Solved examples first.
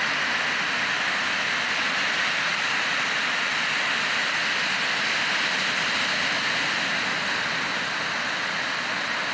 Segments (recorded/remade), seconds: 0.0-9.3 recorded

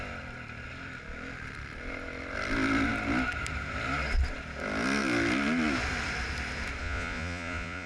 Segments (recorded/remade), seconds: 0.0-6.8 recorded; 6.8-7.9 remade

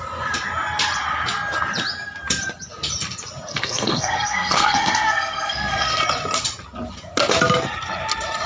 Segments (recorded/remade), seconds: 0.0-3.5 recorded; 3.5-6.0 remade; 6.0-8.5 recorded

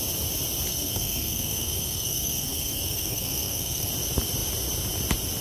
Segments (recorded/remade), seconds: 0.0-0.7 recorded; 0.7-3.9 remade; 3.9-5.4 recorded

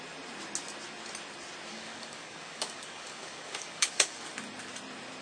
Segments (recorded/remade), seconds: 0.0-1.7 recorded; 1.7-4.3 remade; 4.3-5.2 recorded

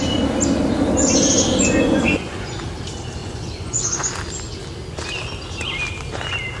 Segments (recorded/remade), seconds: 0.0-1.6 recorded; 1.6-2.6 remade; 2.6-3.2 recorded; 3.2-4.1 remade; 4.1-6.6 recorded

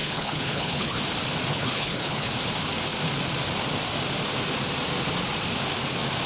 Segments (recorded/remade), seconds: 0.0-1.0 remade; 1.0-1.5 recorded; 1.5-2.3 remade; 2.3-6.3 recorded